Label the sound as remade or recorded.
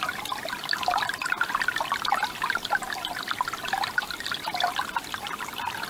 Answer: recorded